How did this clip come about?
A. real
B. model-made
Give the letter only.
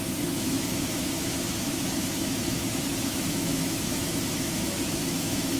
B